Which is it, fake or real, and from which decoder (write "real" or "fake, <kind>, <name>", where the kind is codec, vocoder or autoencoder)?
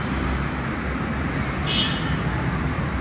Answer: real